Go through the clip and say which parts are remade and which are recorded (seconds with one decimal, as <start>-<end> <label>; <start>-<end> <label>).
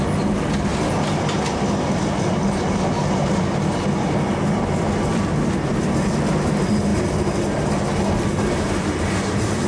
0.0-9.7 recorded